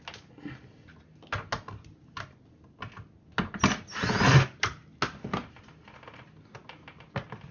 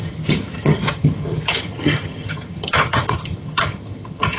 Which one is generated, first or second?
second